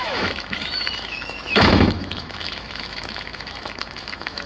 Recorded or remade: remade